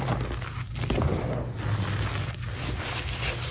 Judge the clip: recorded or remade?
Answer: recorded